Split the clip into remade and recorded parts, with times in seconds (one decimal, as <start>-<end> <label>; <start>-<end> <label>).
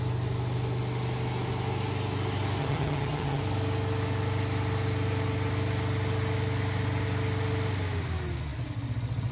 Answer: 0.0-2.6 recorded; 2.6-3.4 remade; 3.4-9.3 recorded